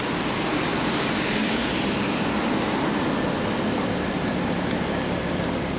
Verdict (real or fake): real